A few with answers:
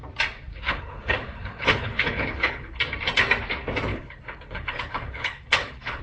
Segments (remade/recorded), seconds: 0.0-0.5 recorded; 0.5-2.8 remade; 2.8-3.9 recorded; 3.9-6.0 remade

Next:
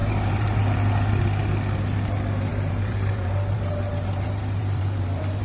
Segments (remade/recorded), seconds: 0.0-0.6 remade; 0.6-2.5 recorded; 2.5-5.4 remade

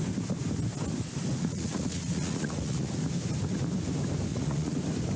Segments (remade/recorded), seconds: 0.0-1.3 recorded; 1.3-2.9 remade; 2.9-4.3 recorded; 4.3-4.8 remade; 4.8-5.2 recorded

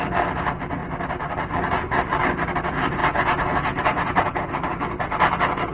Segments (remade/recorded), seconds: 0.0-3.0 recorded; 3.0-4.5 remade; 4.5-5.7 recorded

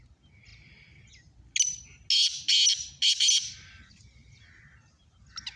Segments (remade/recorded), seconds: 0.0-5.6 recorded

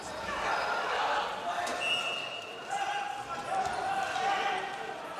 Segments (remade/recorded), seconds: 0.0-5.2 recorded

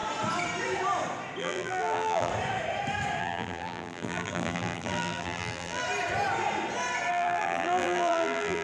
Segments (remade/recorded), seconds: 0.0-1.4 recorded; 1.4-2.3 remade; 2.3-3.2 recorded; 3.2-5.8 remade; 5.8-7.1 recorded; 7.1-8.6 remade

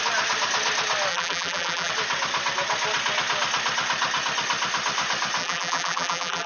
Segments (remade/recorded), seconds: 0.0-1.1 recorded; 1.1-1.9 remade; 1.9-5.4 recorded; 5.4-6.5 remade